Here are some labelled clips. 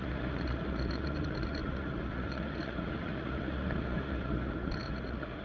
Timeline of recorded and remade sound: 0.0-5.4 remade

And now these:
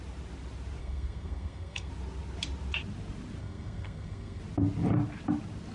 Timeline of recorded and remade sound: 0.0-0.8 recorded; 0.8-1.9 remade; 1.9-3.4 recorded; 3.4-4.4 remade; 4.4-5.7 recorded

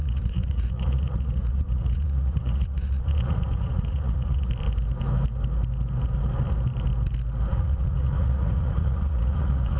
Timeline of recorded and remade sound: 0.0-4.5 remade; 4.5-7.5 recorded; 7.5-9.8 remade